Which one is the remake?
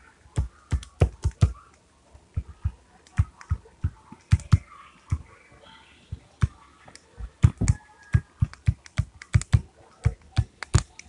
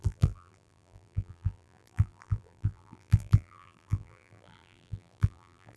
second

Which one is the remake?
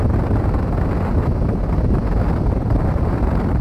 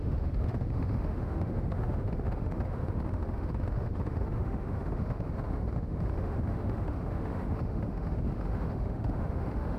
second